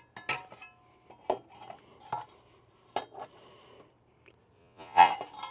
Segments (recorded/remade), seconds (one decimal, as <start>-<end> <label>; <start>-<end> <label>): 0.0-4.6 recorded; 4.6-5.1 remade; 5.1-5.5 recorded